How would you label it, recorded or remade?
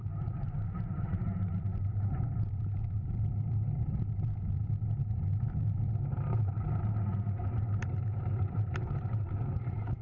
remade